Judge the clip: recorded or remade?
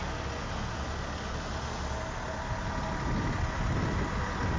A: recorded